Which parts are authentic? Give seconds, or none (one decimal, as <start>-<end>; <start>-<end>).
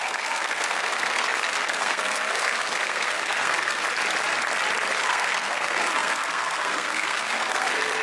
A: 3.8-5.0